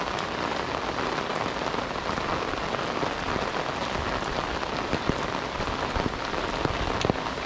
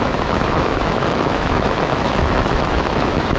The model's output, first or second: second